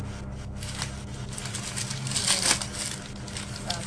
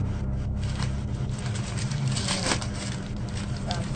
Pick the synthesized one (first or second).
second